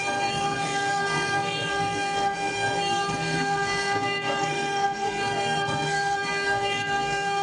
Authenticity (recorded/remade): remade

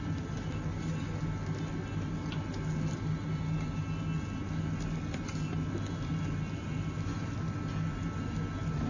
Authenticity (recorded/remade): recorded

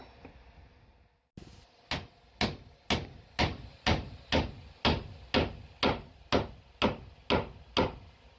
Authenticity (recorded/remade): recorded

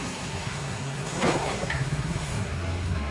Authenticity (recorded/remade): remade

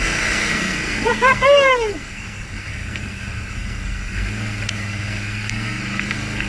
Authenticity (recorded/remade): remade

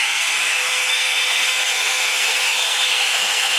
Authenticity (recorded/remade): remade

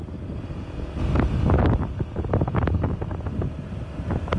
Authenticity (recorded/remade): recorded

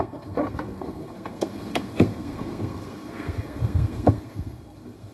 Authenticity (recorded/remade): remade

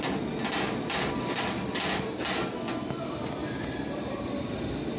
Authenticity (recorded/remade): recorded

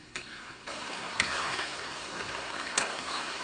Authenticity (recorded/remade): remade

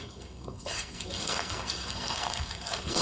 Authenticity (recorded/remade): remade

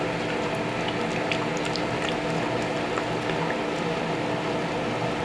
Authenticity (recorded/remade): recorded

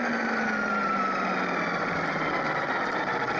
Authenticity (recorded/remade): recorded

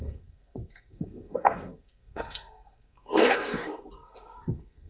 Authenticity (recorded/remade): remade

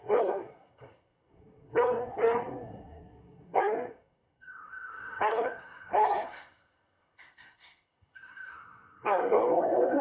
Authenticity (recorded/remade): remade